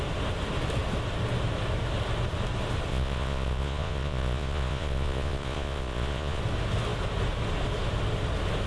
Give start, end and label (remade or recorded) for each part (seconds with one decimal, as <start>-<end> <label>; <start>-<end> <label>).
0.0-2.9 recorded; 2.9-6.4 remade; 6.4-8.7 recorded